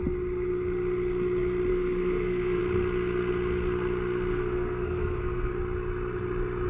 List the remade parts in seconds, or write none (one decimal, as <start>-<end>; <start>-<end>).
1.7-2.6; 4.3-5.5